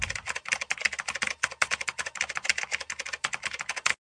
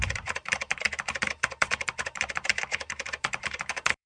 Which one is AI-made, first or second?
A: second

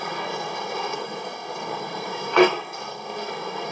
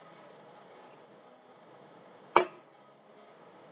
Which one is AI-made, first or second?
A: first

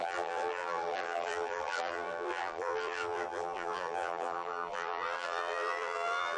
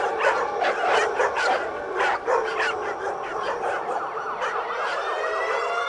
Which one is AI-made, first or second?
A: first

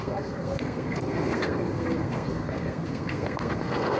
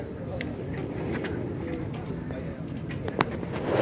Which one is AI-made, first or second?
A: first